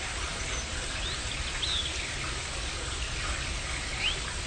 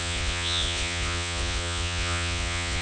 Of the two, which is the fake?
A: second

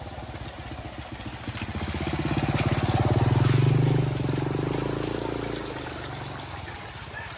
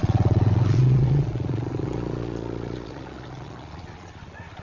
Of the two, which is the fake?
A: second